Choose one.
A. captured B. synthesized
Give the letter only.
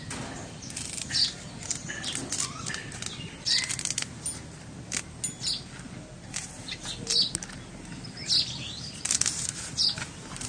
A